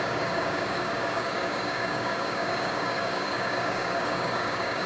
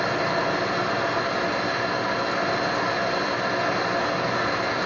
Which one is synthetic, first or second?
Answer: first